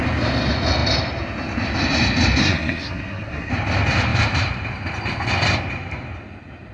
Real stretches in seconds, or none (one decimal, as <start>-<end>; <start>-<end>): 0.0-2.4; 3.5-6.7